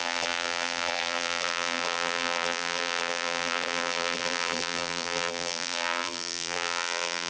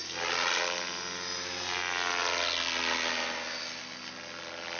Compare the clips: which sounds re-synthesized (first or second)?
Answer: first